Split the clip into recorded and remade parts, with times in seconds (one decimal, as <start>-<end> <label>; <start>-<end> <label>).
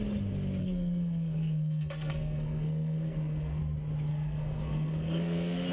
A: 0.0-0.6 recorded; 0.6-3.6 remade; 3.6-4.1 recorded; 4.1-5.7 remade